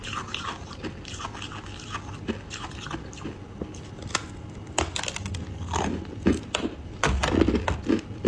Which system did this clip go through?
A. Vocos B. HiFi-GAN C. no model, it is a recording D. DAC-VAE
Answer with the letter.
C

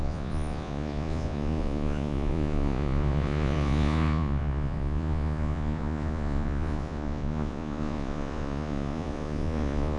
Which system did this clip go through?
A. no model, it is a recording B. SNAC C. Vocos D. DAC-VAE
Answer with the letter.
C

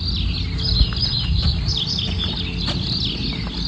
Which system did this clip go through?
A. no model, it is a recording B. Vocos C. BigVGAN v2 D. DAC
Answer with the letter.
A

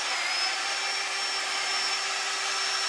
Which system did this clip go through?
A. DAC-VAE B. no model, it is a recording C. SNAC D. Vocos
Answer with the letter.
B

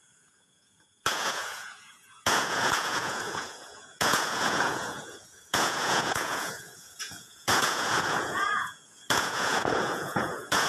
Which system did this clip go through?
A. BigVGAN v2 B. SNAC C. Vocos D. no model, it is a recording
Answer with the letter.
C